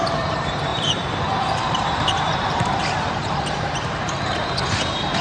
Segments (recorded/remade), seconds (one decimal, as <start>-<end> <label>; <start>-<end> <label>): 0.0-5.2 remade

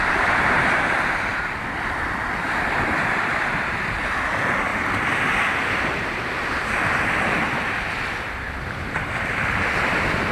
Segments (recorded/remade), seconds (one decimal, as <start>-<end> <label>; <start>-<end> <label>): 0.0-4.7 remade; 4.7-5.5 recorded; 5.5-10.3 remade